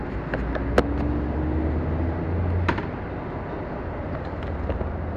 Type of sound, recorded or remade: recorded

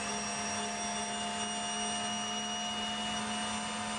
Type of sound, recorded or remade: recorded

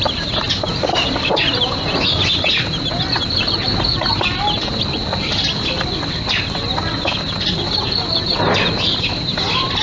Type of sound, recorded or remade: recorded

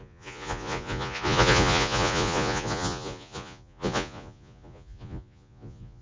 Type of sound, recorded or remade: remade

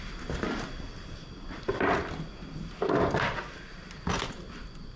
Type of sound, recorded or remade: recorded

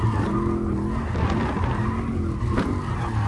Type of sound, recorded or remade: recorded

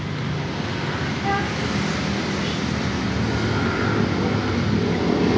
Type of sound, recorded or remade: recorded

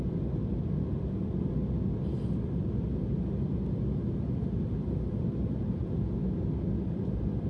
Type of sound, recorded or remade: recorded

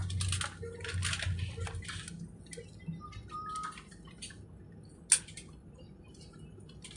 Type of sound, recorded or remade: recorded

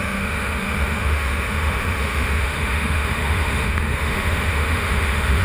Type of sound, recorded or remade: remade